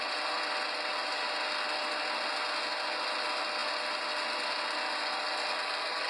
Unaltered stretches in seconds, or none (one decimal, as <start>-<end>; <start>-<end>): 0.0-6.1